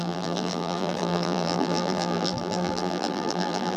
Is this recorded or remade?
remade